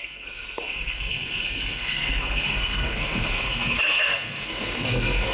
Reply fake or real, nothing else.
fake